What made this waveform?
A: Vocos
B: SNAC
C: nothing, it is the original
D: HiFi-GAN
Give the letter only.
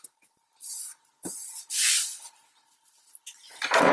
C